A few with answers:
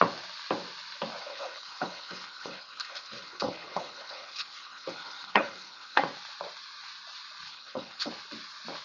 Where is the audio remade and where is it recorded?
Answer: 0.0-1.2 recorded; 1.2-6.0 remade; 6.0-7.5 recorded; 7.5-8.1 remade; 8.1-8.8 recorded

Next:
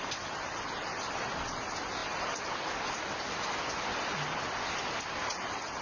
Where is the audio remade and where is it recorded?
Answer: 0.0-5.8 recorded

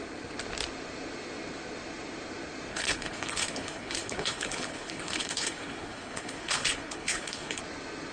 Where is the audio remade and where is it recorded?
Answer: 0.0-2.7 recorded; 2.7-7.6 remade; 7.6-8.1 recorded

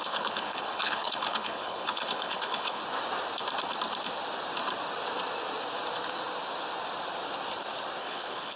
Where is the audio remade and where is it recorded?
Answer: 0.0-2.8 remade; 2.8-8.0 recorded; 8.0-8.6 remade

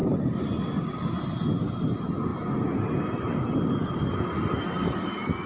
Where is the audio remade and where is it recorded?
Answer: 0.0-5.5 recorded

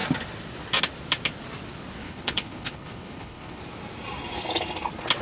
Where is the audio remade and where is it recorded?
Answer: 0.0-2.0 recorded; 2.0-3.6 remade; 3.6-5.2 recorded